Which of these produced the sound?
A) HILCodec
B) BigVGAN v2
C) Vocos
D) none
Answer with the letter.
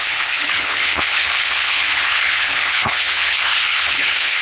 A